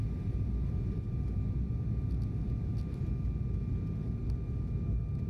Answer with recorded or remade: recorded